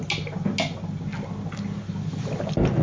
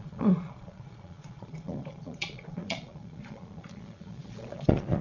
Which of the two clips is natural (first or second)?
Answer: first